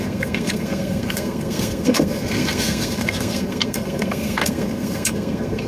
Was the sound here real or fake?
fake